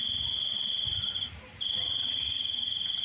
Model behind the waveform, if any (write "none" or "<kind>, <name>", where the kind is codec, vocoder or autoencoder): none